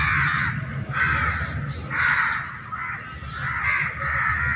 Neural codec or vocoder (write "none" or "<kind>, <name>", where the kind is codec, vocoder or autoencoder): none